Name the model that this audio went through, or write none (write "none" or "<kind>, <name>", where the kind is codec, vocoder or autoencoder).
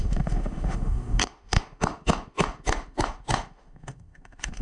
autoencoder, DAC-VAE